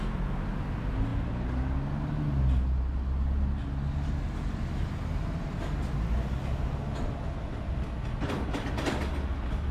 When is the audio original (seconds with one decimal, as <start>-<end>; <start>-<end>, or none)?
0.0-9.7